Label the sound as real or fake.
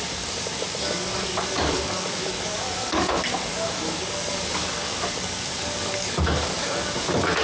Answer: fake